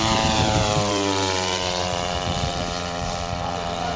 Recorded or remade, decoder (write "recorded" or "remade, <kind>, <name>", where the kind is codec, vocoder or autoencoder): remade, vocoder, BigVGAN v2